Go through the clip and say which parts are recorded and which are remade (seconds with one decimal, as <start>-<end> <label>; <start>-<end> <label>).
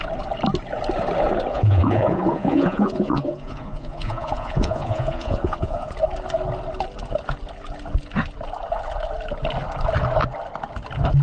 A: 0.0-1.5 recorded; 1.5-5.9 remade; 5.9-11.2 recorded